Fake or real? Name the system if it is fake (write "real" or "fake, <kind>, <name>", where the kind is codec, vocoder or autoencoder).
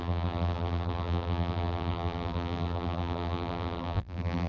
fake, vocoder, BigVGAN v2